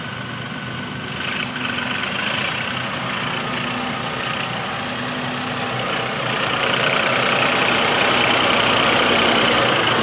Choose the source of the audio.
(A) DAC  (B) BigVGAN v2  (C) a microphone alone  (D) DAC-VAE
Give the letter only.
C